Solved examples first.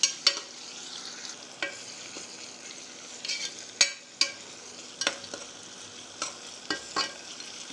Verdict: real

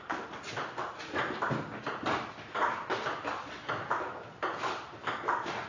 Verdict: real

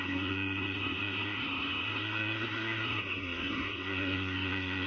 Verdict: fake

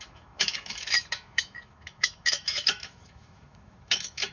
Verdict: fake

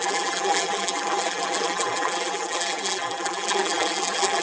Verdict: fake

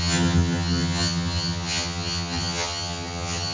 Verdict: fake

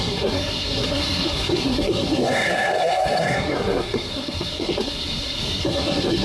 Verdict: fake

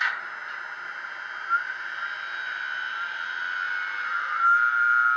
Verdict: real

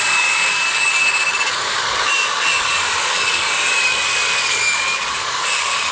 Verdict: fake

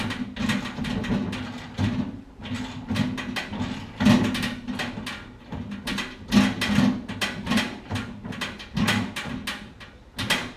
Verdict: real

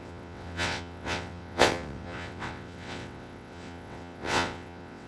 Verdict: fake